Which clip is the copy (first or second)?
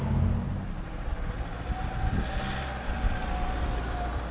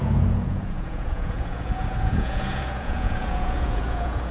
second